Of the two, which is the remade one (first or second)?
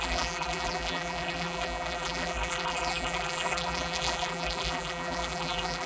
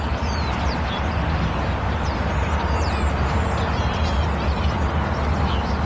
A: first